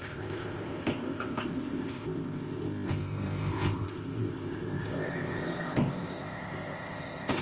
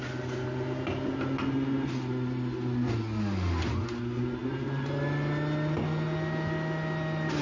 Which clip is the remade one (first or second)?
first